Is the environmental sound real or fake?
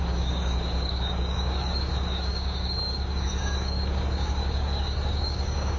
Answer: fake